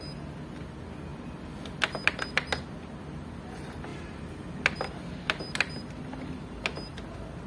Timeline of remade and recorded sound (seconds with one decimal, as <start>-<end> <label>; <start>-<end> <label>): 0.0-7.5 recorded